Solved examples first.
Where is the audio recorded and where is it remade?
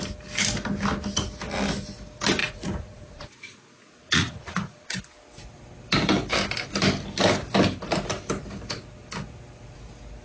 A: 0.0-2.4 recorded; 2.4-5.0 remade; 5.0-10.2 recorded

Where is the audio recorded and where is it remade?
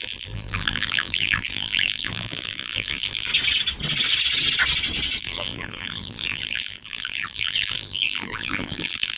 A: 0.0-3.3 remade; 3.3-5.2 recorded; 5.2-9.2 remade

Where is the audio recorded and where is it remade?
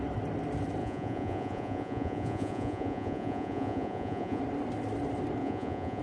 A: 0.0-0.8 recorded; 0.8-4.4 remade; 4.4-5.4 recorded; 5.4-6.0 remade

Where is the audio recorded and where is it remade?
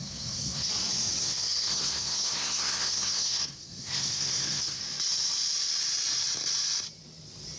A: 0.0-0.7 remade; 0.7-1.2 recorded; 1.2-4.8 remade; 4.8-7.6 recorded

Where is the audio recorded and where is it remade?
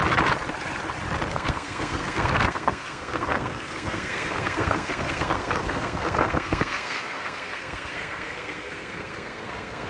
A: 0.0-1.3 recorded; 1.3-9.9 remade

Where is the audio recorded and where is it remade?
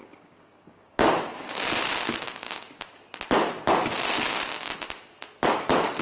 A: 0.0-1.1 remade; 1.1-6.0 recorded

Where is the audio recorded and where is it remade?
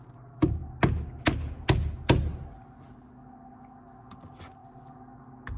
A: 0.0-5.6 recorded